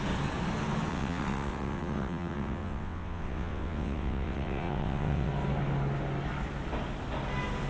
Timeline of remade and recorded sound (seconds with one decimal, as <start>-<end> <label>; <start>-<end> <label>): 0.0-0.9 recorded; 0.9-5.3 remade; 5.3-7.7 recorded